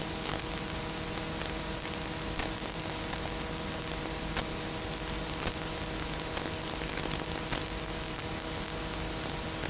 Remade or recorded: recorded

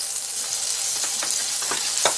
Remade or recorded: recorded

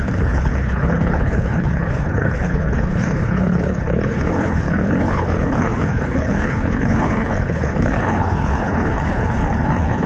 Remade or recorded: remade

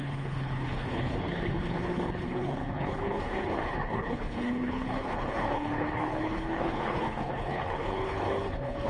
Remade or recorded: remade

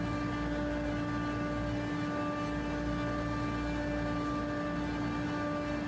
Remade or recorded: recorded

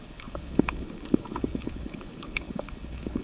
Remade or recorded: remade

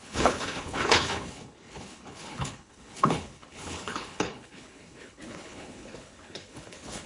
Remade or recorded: remade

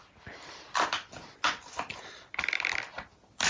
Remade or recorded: recorded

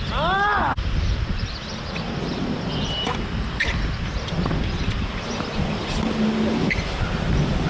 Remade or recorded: recorded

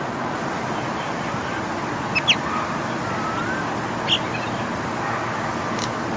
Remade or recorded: recorded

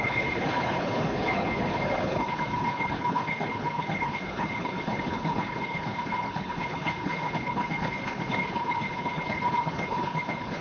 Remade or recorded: remade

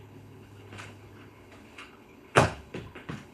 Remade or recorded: remade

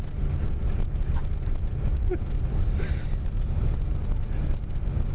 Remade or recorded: recorded